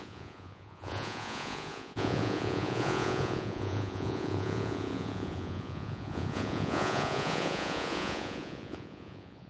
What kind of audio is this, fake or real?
fake